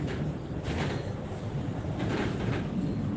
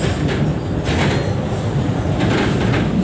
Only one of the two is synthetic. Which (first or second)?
first